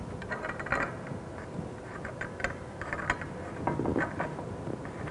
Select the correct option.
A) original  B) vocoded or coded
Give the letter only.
A